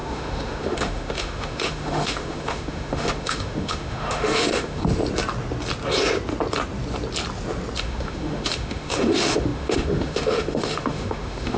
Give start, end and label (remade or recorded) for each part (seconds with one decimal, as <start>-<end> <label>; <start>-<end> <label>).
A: 0.0-4.8 remade; 4.8-7.8 recorded; 7.8-11.6 remade